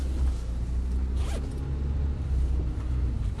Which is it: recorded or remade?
recorded